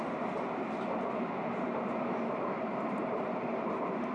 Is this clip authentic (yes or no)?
yes